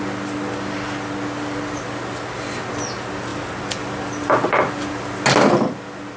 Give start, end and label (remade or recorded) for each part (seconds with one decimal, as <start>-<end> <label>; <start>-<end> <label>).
0.0-6.2 recorded